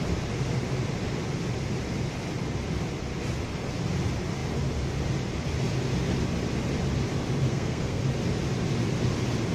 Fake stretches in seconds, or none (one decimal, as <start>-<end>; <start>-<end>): 7.5-8.0